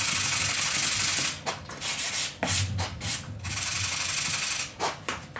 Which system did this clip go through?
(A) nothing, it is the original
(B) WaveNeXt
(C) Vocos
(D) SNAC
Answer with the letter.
A